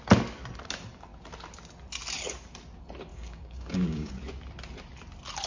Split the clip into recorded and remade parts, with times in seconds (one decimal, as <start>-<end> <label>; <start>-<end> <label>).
0.0-3.1 recorded; 3.1-4.1 remade; 4.1-5.5 recorded